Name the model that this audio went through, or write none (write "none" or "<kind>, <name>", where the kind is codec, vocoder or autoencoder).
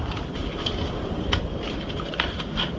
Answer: vocoder, BigVGAN v2